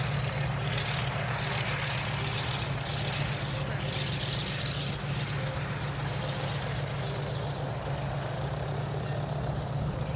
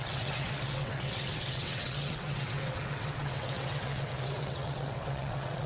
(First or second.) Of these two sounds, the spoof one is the second